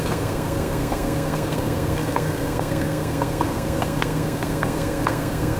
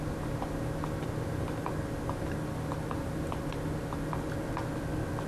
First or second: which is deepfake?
first